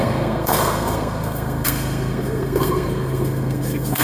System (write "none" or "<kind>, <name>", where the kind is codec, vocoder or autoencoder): codec, SNAC